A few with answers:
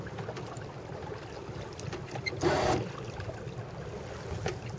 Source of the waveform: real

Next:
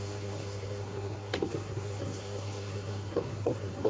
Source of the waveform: fake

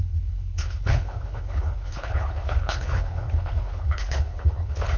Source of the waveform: fake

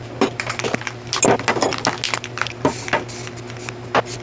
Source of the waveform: real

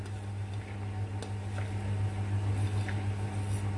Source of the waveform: real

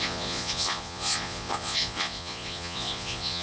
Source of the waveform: fake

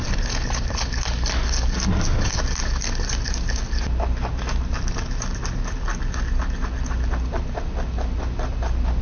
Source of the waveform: real